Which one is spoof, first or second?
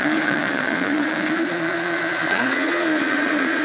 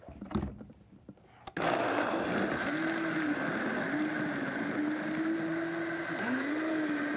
first